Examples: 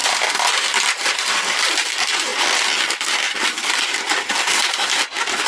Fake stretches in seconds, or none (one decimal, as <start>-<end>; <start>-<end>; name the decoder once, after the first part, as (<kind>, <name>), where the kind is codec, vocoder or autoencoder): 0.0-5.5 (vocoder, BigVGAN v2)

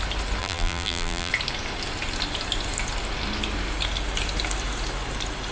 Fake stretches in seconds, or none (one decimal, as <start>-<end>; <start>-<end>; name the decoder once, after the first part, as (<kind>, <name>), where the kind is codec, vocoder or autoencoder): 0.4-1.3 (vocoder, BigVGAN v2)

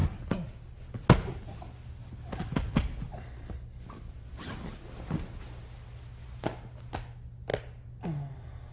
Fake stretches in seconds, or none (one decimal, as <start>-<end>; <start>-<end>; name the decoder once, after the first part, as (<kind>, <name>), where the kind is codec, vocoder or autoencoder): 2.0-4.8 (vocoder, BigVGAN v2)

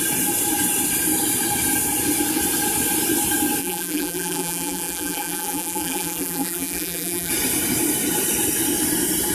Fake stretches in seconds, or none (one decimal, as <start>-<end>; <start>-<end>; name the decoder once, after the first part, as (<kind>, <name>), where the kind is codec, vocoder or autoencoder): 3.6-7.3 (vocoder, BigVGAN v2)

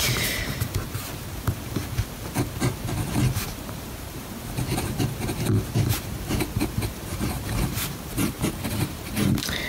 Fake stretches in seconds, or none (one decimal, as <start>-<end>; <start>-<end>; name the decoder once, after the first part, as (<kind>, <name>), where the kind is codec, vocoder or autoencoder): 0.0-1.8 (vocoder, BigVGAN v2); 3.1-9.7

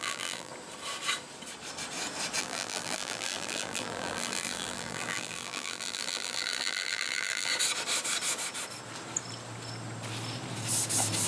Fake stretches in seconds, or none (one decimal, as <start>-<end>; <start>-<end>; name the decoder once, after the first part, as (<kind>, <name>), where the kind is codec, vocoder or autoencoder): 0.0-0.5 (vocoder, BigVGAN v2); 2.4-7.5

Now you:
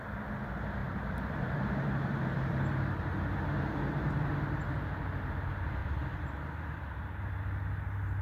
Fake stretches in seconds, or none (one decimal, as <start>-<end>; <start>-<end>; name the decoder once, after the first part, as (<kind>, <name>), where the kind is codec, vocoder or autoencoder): 0.8-5.0 (vocoder, BigVGAN v2); 5.8-7.0

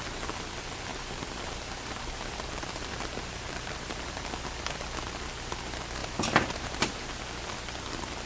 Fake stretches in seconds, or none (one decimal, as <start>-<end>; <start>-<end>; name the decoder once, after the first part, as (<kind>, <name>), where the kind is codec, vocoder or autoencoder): 0.9-4.4 (vocoder, BigVGAN v2); 6.0-7.2